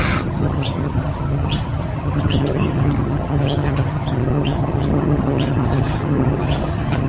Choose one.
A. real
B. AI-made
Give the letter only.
B